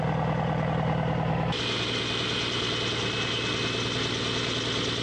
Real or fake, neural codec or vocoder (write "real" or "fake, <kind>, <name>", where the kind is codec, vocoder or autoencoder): real